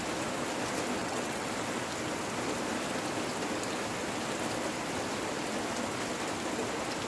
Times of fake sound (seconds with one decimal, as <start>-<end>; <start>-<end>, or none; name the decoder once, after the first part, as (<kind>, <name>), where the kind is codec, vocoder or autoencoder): 1.0-1.5 (vocoder, WaveNeXt)